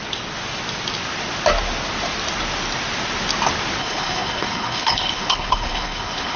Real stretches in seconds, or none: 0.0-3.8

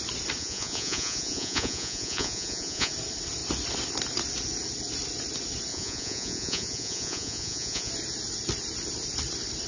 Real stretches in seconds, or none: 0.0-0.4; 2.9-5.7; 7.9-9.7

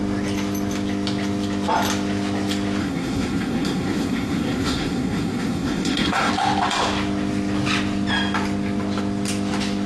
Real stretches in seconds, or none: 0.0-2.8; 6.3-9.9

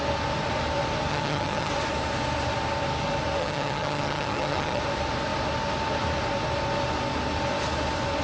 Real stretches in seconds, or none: 0.0-1.1; 1.7-3.4; 4.8-8.2

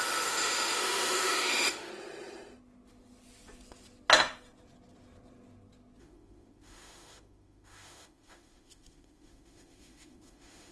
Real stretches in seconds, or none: 1.9-6.0